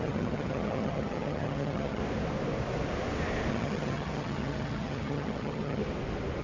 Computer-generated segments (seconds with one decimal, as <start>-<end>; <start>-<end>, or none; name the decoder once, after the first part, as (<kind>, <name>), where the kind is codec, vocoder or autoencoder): 0.0-2.0 (vocoder, HiFi-GAN); 3.5-5.8